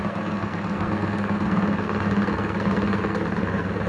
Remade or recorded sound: remade